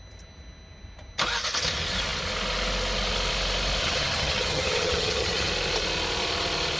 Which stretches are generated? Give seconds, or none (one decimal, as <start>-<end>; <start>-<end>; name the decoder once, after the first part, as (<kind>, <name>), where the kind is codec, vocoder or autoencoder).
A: 3.8-5.5 (vocoder, HiFi-GAN)